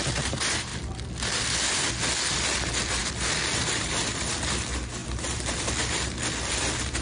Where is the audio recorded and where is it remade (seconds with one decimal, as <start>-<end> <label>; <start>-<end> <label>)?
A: 0.0-0.7 recorded; 0.7-1.9 remade; 1.9-3.0 recorded; 3.0-4.3 remade; 4.3-7.0 recorded